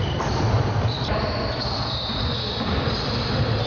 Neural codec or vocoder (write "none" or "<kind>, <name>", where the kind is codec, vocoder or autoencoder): none